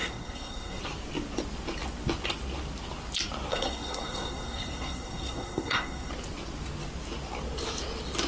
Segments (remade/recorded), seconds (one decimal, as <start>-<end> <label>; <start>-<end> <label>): 0.0-0.8 remade; 0.8-3.5 recorded; 3.5-6.1 remade; 6.1-8.3 recorded

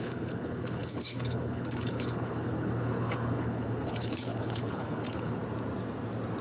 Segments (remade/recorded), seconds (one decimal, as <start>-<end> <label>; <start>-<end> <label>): 0.0-5.4 remade; 5.4-6.4 recorded

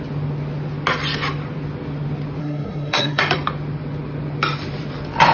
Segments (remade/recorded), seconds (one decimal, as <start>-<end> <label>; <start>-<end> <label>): 0.0-2.4 recorded; 2.4-3.2 remade; 3.2-5.3 recorded